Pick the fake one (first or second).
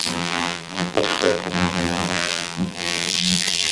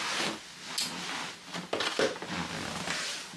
first